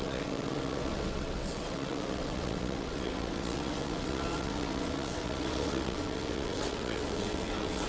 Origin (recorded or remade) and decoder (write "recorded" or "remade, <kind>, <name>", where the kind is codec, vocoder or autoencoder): remade, vocoder, WaveNeXt